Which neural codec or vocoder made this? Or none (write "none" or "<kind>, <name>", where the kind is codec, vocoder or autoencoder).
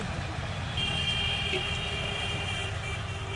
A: none